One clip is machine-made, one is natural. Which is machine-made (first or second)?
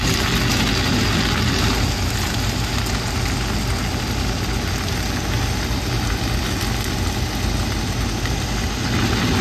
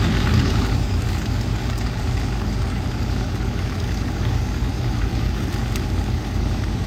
second